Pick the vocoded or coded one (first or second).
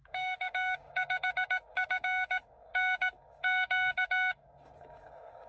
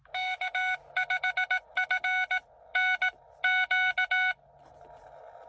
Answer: first